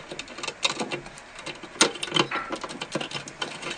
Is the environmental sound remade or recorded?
recorded